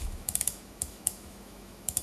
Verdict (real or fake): fake